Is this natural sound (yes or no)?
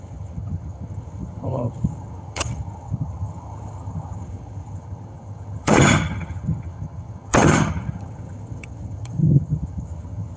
no